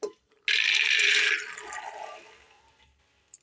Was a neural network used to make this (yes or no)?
no